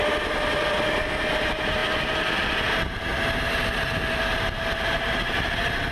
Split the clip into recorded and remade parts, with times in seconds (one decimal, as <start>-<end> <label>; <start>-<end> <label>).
0.0-5.9 recorded